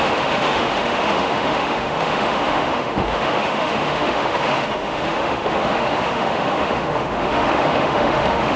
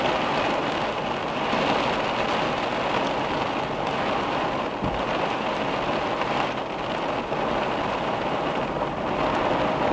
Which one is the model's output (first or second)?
first